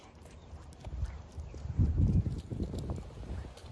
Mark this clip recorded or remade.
remade